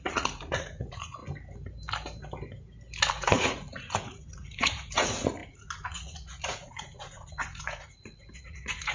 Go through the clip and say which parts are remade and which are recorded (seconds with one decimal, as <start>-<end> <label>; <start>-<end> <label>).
0.0-1.2 remade; 1.2-3.1 recorded; 3.1-8.9 remade